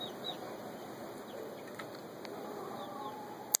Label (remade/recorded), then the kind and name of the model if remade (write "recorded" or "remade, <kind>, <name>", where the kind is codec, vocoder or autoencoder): recorded